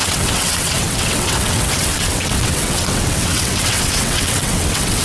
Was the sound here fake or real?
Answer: fake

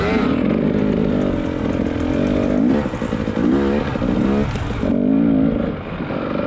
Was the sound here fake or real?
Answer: real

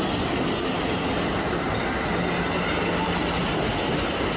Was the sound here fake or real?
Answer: real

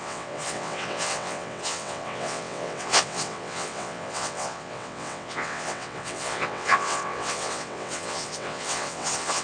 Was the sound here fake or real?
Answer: fake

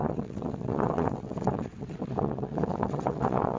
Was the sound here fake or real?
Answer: fake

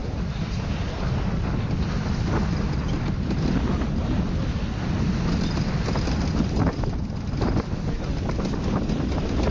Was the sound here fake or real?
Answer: real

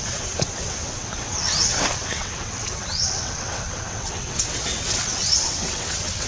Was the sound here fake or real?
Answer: fake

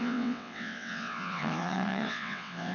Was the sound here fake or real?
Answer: fake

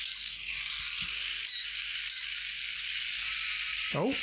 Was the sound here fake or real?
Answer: real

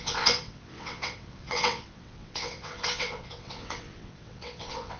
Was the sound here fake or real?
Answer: fake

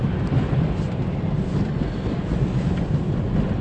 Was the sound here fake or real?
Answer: real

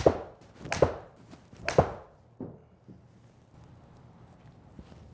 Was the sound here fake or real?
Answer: real